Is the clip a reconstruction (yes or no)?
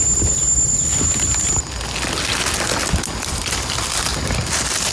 no